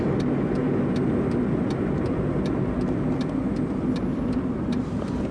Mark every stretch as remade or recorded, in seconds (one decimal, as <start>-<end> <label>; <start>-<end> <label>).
0.0-4.1 recorded; 4.1-5.3 remade